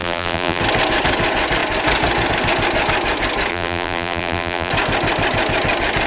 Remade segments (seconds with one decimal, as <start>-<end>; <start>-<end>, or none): 0.0-0.6; 3.5-4.7